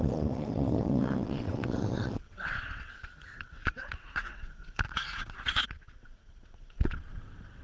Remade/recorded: remade